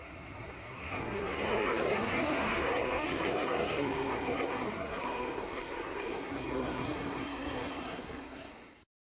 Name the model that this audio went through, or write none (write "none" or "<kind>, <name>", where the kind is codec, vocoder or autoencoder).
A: codec, SNAC